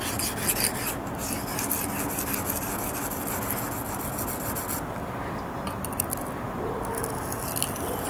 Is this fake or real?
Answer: real